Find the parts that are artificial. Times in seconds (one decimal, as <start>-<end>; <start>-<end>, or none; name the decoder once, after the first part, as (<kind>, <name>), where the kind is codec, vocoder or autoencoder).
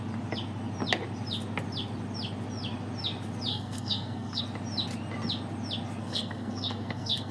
3.5-4.4 (codec, SNAC); 6.0-7.3